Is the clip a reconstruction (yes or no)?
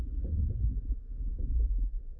no